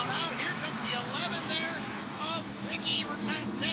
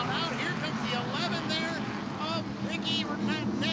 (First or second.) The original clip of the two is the second